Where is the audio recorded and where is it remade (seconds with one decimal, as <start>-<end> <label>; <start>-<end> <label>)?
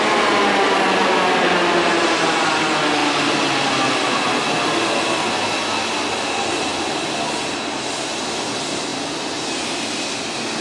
0.0-10.6 recorded